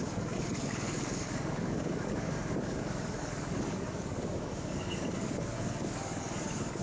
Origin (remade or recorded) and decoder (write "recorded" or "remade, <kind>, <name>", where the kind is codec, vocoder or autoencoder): remade, codec, DAC